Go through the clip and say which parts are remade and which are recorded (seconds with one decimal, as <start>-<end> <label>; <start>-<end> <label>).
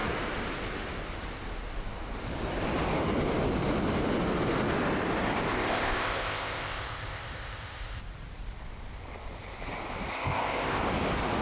0.0-5.5 recorded; 5.5-8.0 remade; 8.0-10.1 recorded; 10.1-10.8 remade; 10.8-11.4 recorded